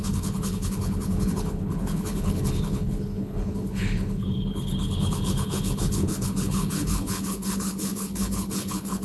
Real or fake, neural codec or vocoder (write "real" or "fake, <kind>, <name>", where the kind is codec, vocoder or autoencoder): fake, codec, HILCodec